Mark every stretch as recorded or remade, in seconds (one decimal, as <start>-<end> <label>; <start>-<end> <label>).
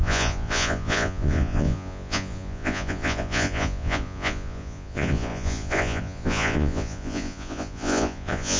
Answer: 0.0-8.6 remade